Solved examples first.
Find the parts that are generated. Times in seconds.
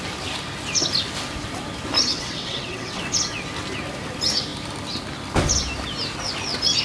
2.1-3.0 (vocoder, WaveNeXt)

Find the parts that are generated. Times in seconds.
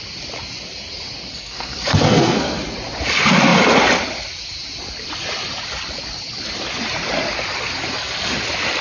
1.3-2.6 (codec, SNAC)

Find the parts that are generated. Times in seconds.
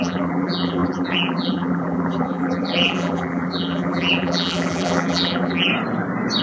0.0-5.7 (vocoder, BigVGAN v2)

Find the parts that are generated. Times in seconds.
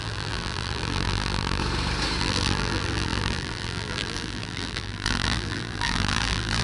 0.0-1.6 (vocoder, BigVGAN v2); 2.2-6.6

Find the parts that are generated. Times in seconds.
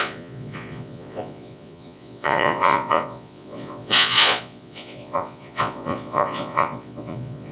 0.0-7.5 (vocoder, Vocos)